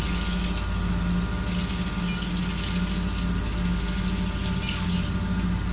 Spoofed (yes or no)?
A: no